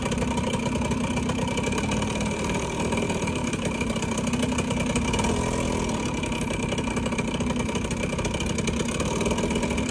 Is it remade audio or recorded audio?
recorded